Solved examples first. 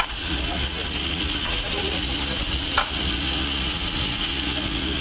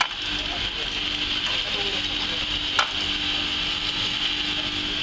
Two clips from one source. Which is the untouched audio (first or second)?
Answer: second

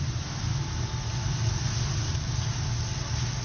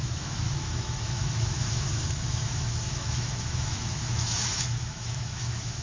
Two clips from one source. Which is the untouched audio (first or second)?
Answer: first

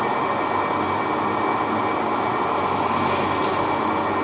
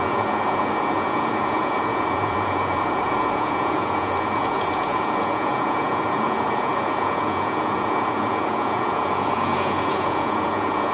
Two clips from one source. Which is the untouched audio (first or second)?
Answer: first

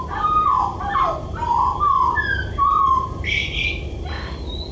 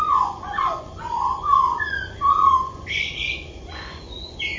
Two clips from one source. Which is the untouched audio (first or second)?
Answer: first